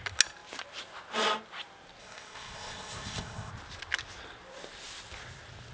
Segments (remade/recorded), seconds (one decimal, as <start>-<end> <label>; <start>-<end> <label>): 0.0-2.0 recorded; 2.0-3.5 remade; 3.5-5.7 recorded